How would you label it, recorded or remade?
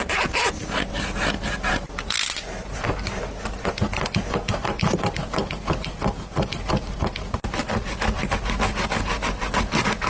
recorded